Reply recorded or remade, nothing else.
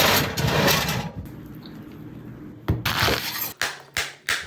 recorded